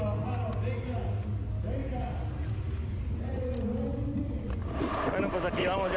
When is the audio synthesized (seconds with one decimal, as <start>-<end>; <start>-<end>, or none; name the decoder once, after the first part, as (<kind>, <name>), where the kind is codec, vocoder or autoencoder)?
none